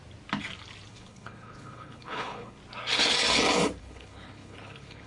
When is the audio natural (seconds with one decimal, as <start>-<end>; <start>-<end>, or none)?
0.0-0.9; 2.6-3.8